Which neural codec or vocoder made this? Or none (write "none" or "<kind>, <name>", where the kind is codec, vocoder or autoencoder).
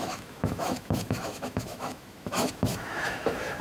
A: autoencoder, DAC-VAE